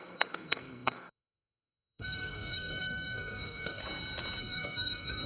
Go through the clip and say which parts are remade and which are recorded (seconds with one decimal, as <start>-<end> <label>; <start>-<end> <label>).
0.0-3.8 remade; 3.8-4.4 recorded; 4.4-5.3 remade